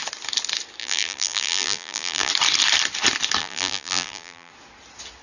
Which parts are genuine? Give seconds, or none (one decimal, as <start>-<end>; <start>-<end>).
0.0-0.8; 2.3-3.4; 4.5-5.2